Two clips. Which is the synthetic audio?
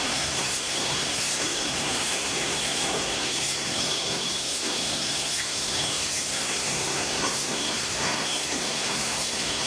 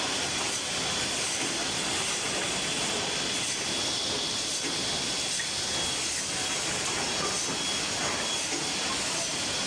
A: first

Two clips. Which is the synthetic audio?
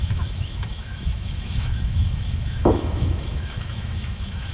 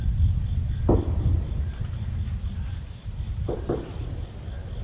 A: first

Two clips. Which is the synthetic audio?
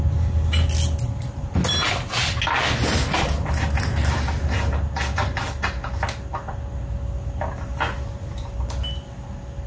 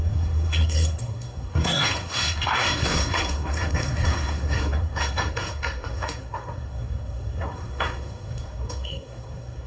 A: second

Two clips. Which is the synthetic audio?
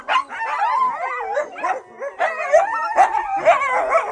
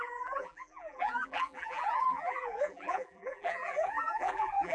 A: second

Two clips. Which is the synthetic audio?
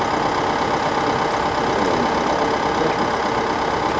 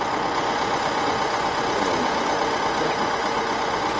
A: second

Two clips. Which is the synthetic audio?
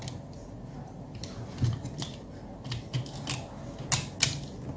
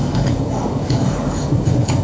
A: second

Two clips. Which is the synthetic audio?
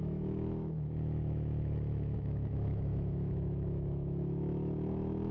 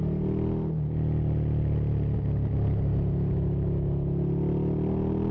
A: first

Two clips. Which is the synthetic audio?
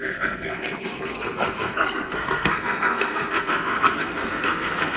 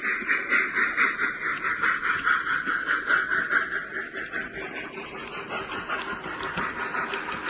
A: first